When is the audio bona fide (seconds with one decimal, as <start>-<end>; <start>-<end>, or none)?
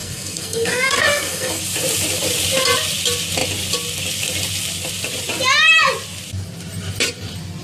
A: 1.6-7.6